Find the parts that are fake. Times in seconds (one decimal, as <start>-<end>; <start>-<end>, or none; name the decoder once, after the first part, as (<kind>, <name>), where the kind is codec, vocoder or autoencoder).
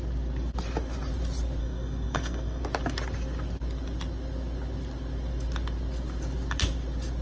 1.6-2.6 (codec, SNAC)